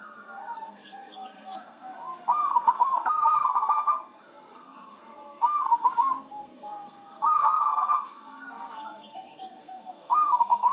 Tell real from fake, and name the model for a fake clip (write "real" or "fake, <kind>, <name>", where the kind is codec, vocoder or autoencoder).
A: fake, codec, SNAC